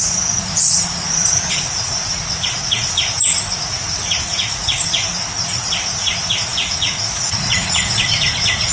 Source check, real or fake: fake